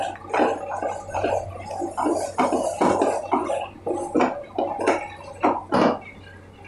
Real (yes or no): yes